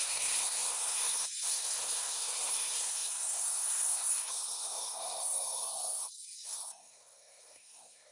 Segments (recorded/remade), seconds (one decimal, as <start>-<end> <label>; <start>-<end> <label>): 0.0-8.1 remade